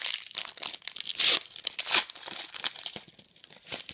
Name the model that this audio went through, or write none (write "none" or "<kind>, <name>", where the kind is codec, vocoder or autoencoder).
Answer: none